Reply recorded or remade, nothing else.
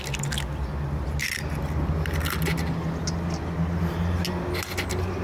recorded